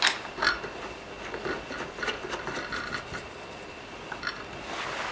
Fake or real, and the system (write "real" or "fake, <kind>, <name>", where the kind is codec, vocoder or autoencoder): real